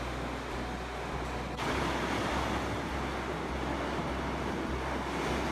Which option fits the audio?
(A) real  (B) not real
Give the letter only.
A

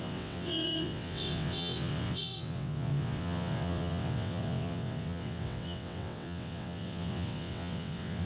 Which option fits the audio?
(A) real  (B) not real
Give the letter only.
B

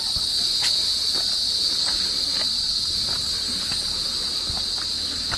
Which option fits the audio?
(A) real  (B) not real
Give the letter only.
A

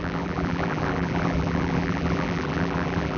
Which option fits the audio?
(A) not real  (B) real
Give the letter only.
A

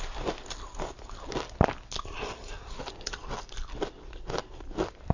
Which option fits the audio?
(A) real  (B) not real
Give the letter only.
A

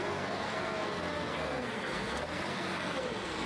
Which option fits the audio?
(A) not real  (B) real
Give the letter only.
A